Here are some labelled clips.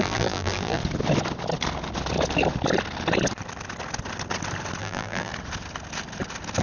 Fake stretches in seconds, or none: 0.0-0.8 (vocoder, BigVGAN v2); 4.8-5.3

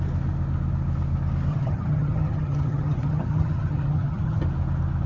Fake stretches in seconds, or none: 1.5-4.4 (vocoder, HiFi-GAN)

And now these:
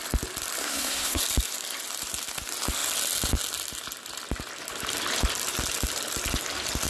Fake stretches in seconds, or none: 0.6-1.2 (codec, SNAC)

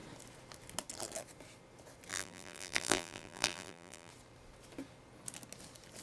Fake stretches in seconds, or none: 2.1-4.1 (vocoder, BigVGAN v2)

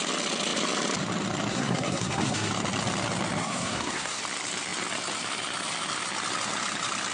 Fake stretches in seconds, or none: 1.5-2.5 (codec, SNAC); 3.4-4.2